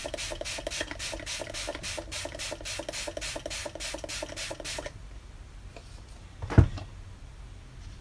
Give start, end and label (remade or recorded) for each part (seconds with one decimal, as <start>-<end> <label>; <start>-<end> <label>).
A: 0.0-0.6 remade; 0.6-1.7 recorded; 1.7-2.5 remade; 2.5-8.0 recorded